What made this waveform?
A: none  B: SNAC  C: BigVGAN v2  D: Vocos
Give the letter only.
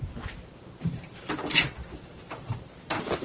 C